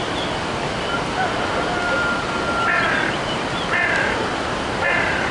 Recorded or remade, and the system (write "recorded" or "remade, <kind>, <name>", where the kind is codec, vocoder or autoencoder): recorded